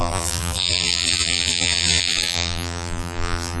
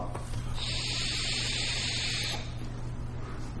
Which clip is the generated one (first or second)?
first